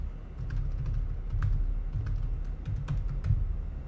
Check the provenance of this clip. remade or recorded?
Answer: recorded